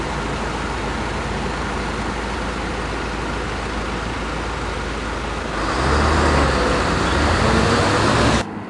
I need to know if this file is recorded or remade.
recorded